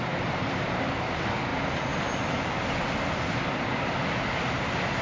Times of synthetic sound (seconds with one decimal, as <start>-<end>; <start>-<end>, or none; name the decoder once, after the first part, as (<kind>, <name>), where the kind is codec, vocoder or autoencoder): none